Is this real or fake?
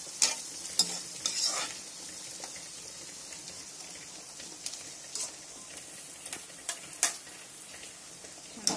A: real